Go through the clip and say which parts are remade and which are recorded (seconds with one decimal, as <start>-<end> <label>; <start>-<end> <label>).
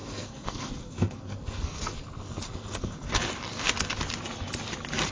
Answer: 0.0-3.1 remade; 3.1-5.1 recorded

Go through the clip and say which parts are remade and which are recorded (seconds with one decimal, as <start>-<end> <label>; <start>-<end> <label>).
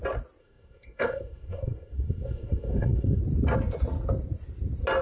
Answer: 0.0-0.4 recorded; 0.4-3.2 remade; 3.2-5.0 recorded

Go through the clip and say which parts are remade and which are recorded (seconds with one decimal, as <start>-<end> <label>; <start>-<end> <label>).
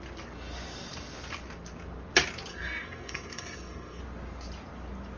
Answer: 0.0-2.5 recorded; 2.5-4.0 remade; 4.0-5.2 recorded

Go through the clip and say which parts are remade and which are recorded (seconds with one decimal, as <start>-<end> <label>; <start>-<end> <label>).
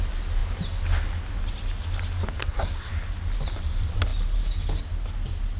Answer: 0.0-2.4 recorded; 2.4-2.9 remade; 2.9-5.6 recorded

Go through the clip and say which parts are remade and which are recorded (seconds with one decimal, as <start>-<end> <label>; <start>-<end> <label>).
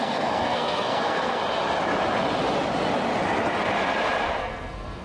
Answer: 0.0-1.4 remade; 1.4-4.4 recorded; 4.4-5.0 remade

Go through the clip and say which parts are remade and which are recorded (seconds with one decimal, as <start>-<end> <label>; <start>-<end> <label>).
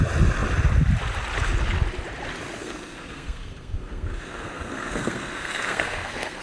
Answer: 0.0-2.6 recorded; 2.6-6.4 remade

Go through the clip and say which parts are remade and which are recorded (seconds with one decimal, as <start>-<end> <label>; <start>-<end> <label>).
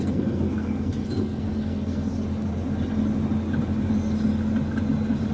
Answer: 0.0-2.1 remade; 2.1-5.3 recorded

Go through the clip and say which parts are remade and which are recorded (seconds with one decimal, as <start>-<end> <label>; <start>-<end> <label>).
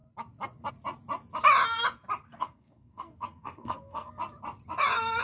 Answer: 0.0-2.3 recorded; 2.3-4.1 remade; 4.1-5.2 recorded